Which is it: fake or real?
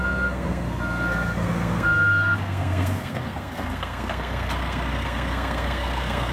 fake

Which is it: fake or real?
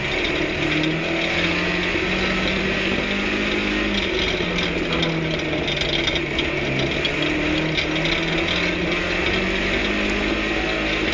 real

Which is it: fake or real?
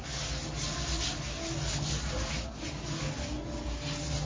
real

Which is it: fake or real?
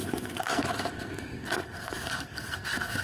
fake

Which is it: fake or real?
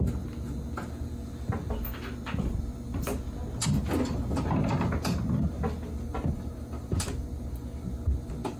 real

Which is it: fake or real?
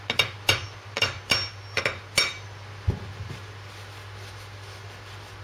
real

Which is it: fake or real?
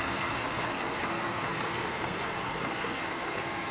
fake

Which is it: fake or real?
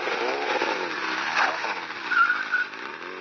real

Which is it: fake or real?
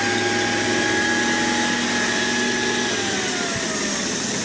real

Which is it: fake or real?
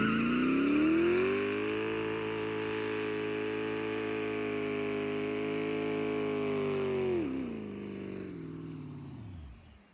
real